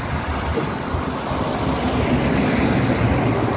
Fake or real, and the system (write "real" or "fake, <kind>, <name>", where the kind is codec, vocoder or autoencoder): real